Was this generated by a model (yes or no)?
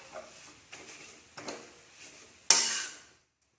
no